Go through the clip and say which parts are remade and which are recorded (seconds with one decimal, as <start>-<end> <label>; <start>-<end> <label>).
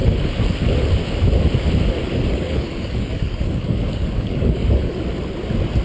0.0-2.0 recorded; 2.0-5.0 remade; 5.0-5.8 recorded